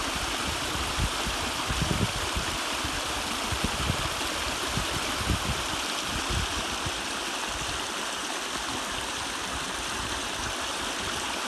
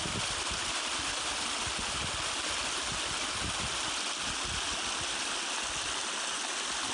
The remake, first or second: first